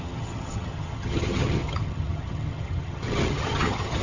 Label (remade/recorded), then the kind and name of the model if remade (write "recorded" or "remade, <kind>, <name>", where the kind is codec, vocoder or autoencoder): remade, vocoder, HiFi-GAN